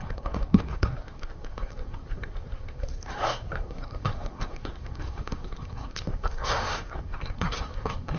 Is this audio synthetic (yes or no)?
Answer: yes